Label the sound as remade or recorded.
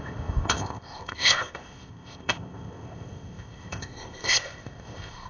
remade